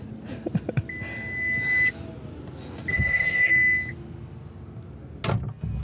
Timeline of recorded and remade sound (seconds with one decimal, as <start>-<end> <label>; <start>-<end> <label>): 0.0-2.9 recorded; 2.9-3.5 remade; 3.5-5.8 recorded

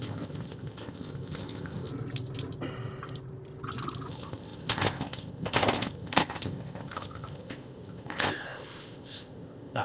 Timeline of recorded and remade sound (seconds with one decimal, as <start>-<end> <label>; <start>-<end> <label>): 0.0-1.9 remade; 1.9-4.1 recorded; 4.1-9.8 remade

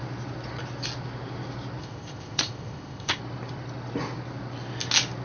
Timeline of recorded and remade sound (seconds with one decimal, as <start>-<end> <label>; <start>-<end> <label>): 0.0-1.8 recorded; 1.8-3.2 remade; 3.2-5.2 recorded

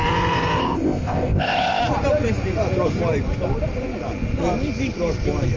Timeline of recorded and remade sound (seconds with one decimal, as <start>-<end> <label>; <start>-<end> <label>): 0.0-0.6 recorded; 0.6-1.8 remade; 1.8-5.6 recorded

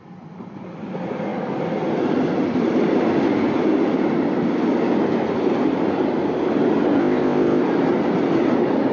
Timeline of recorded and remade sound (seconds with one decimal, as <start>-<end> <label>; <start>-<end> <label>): 0.0-7.0 recorded; 7.0-7.6 remade; 7.6-8.9 recorded

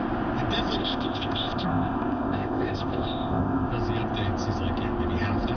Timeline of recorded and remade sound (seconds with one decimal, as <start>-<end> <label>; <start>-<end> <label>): 0.0-0.8 recorded; 0.8-3.7 remade; 3.7-5.6 recorded

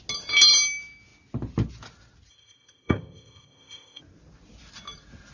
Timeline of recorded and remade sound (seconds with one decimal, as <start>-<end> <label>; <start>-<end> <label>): 0.0-2.3 recorded; 2.3-4.0 remade; 4.0-5.3 recorded

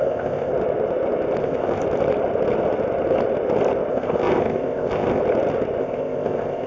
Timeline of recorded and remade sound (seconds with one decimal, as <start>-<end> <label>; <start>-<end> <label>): 0.0-0.5 remade; 0.5-1.4 recorded; 1.4-1.8 remade; 1.8-3.9 recorded; 3.9-5.2 remade; 5.2-5.8 recorded; 5.8-6.7 remade